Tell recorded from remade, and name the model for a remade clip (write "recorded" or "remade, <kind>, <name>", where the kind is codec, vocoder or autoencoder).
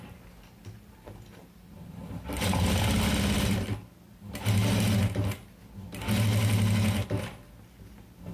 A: recorded